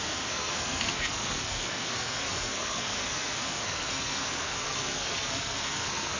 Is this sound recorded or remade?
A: remade